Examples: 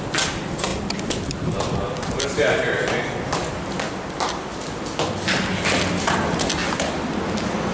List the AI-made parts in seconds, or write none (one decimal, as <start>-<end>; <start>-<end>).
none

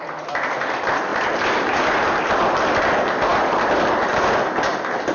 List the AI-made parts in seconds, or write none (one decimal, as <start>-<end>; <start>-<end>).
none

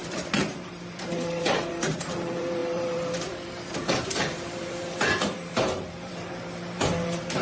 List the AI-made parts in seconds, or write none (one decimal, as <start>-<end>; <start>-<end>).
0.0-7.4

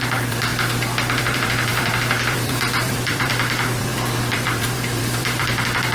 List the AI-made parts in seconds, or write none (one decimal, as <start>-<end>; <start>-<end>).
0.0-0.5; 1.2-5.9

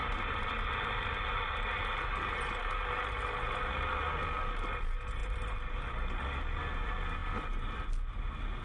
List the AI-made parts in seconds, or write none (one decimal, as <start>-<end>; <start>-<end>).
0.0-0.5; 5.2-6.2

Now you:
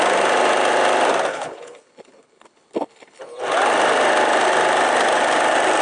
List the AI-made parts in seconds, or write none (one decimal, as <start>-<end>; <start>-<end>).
1.3-3.2